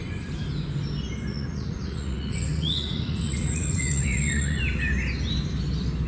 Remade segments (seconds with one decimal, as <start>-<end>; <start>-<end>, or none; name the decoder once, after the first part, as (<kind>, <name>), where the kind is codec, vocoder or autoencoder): 1.3-4.6 (vocoder, Vocos)